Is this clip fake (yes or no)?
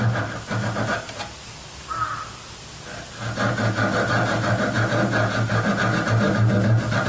no